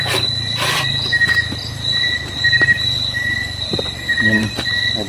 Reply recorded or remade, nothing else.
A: remade